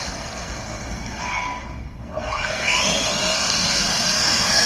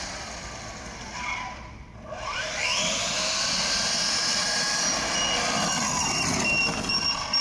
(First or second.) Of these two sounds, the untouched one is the second